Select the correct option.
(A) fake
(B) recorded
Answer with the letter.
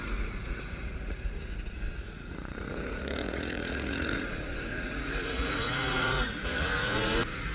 A